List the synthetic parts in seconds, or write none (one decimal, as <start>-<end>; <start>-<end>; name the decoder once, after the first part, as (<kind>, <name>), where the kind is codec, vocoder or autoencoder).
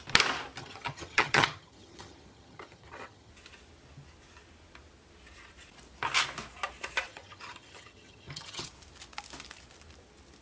0.6-3.3 (vocoder, HiFi-GAN); 7.1-8.7